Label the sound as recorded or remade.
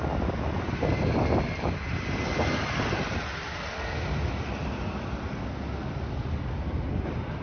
recorded